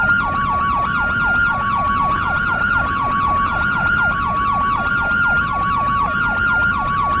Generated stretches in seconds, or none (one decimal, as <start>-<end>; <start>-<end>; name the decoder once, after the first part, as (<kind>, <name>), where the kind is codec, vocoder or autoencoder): 1.5-4.0 (vocoder, Vocos)